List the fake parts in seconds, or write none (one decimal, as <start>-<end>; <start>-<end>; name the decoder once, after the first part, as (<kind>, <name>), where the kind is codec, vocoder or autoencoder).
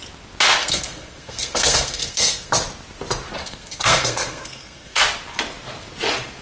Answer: 0.6-2.5 (codec, SNAC); 3.4-5.0